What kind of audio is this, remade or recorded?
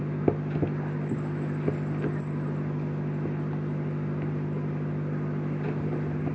recorded